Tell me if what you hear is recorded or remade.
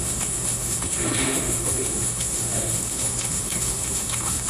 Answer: remade